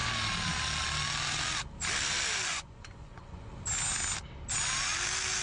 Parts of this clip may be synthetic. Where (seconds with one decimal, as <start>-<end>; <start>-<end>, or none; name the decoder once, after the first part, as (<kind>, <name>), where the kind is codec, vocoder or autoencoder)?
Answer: 2.5-3.5 (vocoder, Vocos)